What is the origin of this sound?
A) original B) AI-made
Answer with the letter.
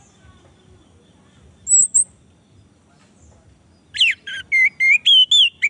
A